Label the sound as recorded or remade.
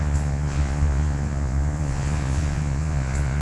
remade